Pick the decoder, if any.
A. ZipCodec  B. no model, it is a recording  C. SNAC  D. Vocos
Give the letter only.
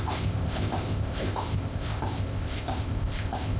A